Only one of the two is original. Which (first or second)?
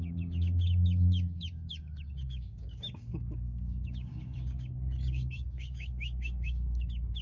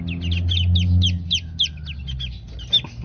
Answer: second